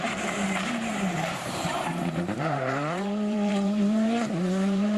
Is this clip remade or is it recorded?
remade